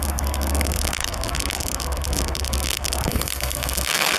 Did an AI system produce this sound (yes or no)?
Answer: yes